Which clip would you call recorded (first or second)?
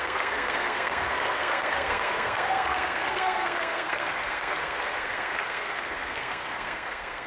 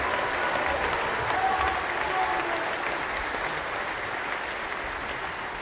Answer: second